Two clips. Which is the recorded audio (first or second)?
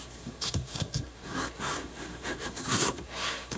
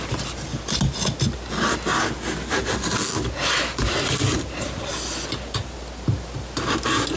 second